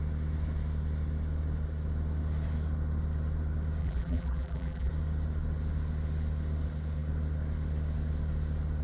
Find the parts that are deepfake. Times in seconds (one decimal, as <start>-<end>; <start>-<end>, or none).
3.8-4.9